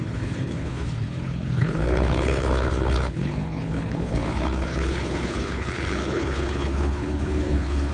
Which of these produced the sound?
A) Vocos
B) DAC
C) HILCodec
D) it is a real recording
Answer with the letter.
C